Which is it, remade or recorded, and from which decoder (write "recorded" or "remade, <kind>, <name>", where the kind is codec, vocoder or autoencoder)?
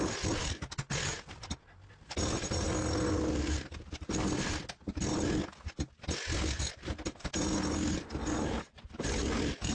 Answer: recorded